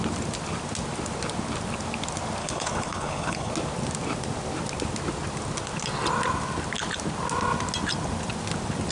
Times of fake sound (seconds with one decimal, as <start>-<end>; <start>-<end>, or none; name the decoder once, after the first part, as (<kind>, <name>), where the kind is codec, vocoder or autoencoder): 2.4-3.5 (codec, HILCodec)